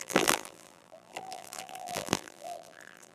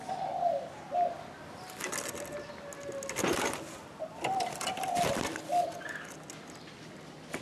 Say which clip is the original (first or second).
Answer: second